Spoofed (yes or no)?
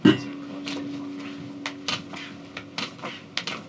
no